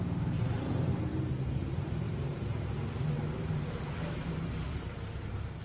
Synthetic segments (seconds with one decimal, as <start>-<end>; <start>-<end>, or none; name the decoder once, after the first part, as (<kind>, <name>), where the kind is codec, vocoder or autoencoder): 0.0-5.6 (vocoder, BigVGAN v2)